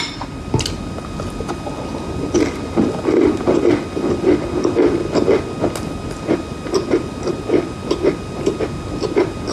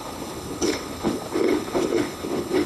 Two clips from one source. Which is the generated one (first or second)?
second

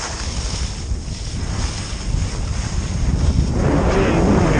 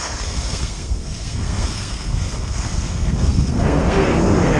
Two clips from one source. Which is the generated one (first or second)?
second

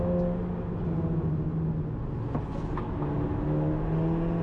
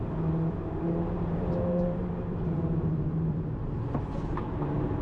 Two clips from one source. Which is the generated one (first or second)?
second